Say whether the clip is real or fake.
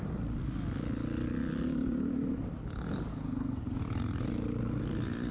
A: real